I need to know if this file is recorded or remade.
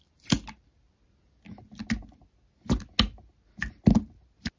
recorded